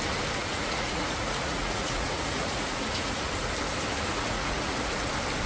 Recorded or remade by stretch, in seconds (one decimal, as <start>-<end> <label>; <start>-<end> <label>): 0.0-0.4 recorded; 0.4-3.3 remade; 3.3-4.1 recorded; 4.1-5.1 remade; 5.1-5.5 recorded